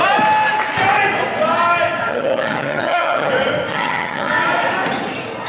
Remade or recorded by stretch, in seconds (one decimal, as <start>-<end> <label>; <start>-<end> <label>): 0.0-2.1 recorded; 2.1-3.3 remade; 3.3-3.7 recorded; 3.7-4.3 remade; 4.3-5.5 recorded